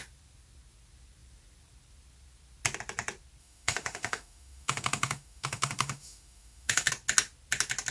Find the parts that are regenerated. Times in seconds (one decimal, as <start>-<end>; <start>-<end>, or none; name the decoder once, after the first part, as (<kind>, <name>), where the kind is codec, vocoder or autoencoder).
3.4-6.9 (autoencoder, DAC-VAE)